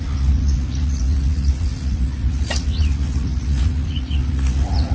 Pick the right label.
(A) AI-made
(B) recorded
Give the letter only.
A